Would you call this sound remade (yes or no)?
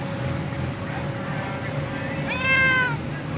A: no